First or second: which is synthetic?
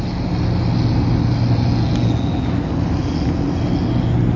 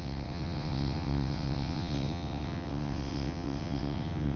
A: second